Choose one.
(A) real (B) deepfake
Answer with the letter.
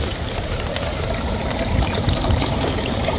B